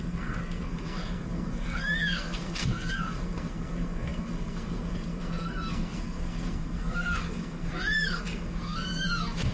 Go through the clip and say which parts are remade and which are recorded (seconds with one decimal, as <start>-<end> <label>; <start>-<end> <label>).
0.0-9.5 remade